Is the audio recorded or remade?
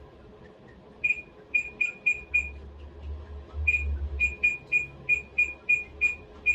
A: recorded